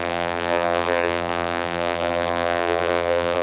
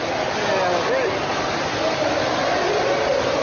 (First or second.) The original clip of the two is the second